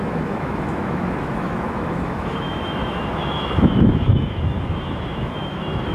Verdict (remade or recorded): remade